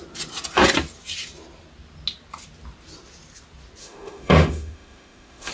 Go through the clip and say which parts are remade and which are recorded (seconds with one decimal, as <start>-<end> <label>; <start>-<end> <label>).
0.0-3.8 recorded; 3.8-5.5 remade

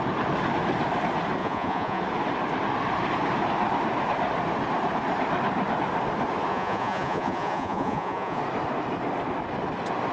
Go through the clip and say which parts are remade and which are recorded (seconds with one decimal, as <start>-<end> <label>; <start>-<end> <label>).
0.0-1.4 recorded; 1.4-2.0 remade; 2.0-6.5 recorded; 6.5-8.4 remade; 8.4-10.1 recorded

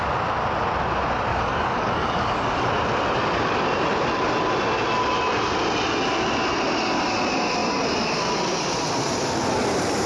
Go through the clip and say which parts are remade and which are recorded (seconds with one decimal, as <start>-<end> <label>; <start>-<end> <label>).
0.0-1.3 recorded; 1.3-2.7 remade; 2.7-10.1 recorded

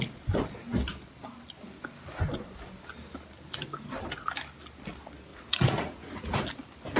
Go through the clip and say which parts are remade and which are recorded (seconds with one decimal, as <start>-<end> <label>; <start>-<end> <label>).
0.0-5.3 recorded; 5.3-6.4 remade; 6.4-7.0 recorded

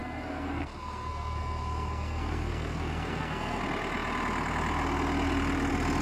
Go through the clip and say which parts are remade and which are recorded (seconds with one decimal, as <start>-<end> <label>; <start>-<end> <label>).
0.0-3.6 remade; 3.6-6.0 recorded

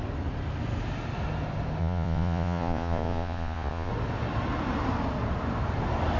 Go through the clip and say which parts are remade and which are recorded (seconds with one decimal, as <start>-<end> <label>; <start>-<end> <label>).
0.0-1.8 recorded; 1.8-3.9 remade; 3.9-6.2 recorded